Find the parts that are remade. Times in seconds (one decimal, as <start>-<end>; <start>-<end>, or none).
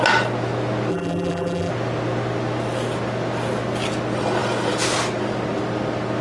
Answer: 0.9-1.7